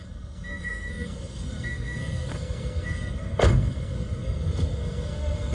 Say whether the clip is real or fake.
fake